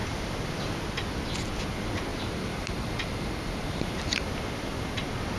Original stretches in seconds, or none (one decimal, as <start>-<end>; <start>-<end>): 0.0-2.1; 4.3-5.4